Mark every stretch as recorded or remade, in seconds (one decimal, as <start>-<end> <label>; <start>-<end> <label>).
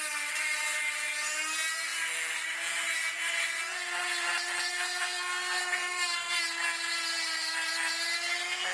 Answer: 0.0-4.7 recorded; 4.7-6.4 remade; 6.4-8.7 recorded